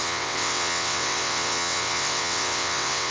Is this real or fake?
fake